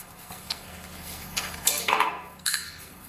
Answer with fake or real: fake